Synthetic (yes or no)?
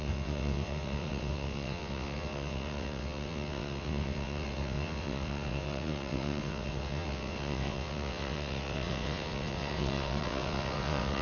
yes